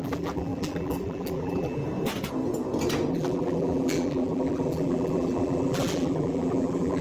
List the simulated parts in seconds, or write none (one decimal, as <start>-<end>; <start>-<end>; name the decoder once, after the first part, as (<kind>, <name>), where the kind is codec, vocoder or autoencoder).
0.0-1.8 (vocoder, BigVGAN v2); 3.1-7.0